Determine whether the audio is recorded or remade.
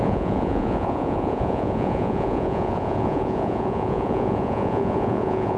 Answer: remade